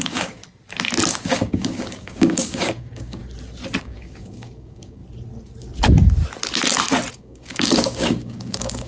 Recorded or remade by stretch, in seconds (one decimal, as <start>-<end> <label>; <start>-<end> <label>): 0.0-0.4 remade; 0.4-1.1 recorded; 1.1-3.2 remade; 3.2-3.8 recorded; 3.8-5.0 remade; 5.0-7.1 recorded; 7.1-8.9 remade